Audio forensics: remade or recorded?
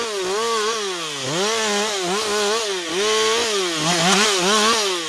recorded